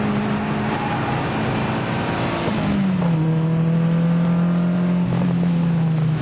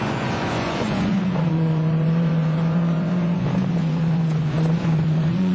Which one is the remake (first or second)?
second